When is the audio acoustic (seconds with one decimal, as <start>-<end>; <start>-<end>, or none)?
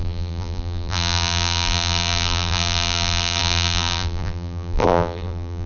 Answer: none